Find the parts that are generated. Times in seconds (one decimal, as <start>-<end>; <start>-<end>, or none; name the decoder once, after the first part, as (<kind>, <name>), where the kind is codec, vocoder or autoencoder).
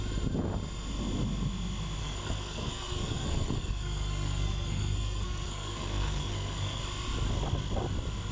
2.0-6.8 (codec, SNAC)